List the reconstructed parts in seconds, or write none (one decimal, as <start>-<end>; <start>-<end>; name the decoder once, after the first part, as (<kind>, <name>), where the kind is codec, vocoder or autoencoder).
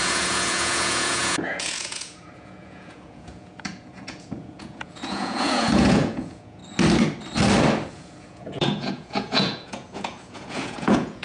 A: 0.0-6.6 (vocoder, Vocos); 7.9-11.2